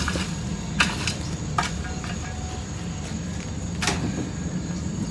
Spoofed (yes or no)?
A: no